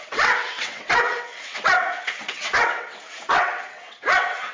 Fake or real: fake